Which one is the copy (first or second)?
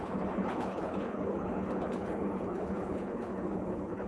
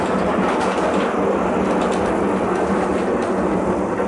first